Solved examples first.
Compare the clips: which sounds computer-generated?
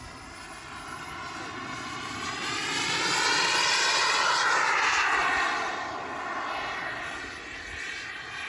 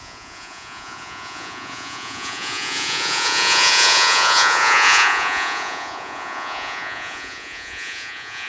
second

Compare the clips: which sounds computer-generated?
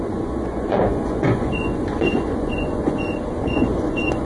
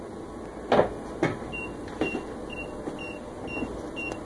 first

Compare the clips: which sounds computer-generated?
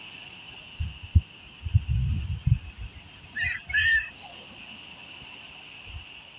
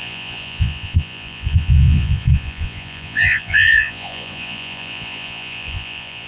second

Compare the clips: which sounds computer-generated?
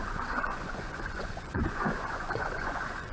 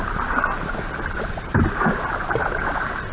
first